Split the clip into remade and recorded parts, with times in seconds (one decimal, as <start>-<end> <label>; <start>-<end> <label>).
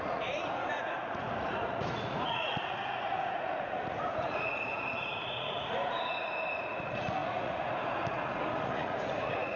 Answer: 0.0-9.6 remade